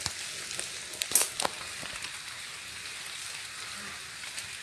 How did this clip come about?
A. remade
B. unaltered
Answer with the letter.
B